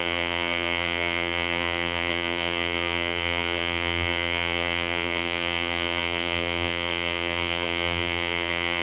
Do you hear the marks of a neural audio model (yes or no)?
yes